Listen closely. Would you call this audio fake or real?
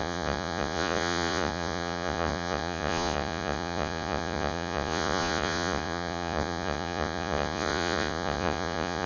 fake